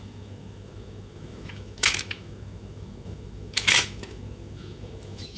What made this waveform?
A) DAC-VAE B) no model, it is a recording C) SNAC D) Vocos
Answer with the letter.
A